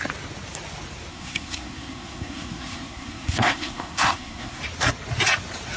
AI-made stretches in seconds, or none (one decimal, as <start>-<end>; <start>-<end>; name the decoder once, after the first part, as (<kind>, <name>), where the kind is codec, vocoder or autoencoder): 1.1-4.6 (codec, SNAC)